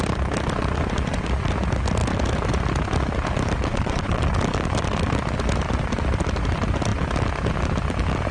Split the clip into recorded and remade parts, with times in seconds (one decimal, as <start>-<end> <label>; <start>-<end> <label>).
0.0-3.7 recorded; 3.7-4.2 remade; 4.2-8.3 recorded